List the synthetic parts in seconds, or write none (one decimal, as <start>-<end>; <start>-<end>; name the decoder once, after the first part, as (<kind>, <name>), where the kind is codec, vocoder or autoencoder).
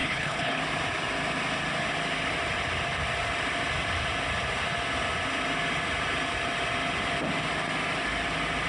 0.0-0.6 (codec, HILCodec)